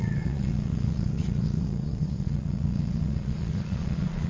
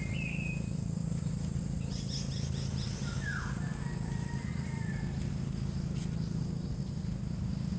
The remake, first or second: first